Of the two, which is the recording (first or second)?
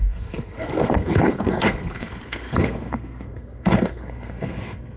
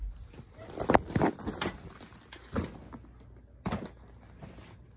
second